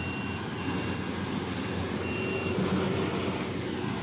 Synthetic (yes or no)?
no